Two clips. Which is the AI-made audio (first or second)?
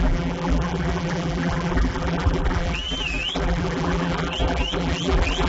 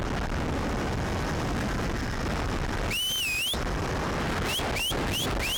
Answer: first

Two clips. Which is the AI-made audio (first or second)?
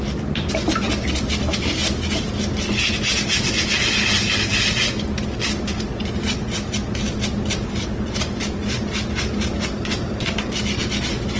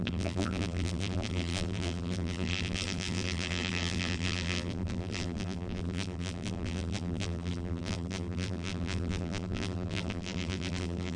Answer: second